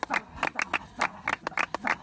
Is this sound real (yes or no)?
yes